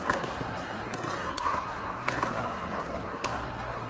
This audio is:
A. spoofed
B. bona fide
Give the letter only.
A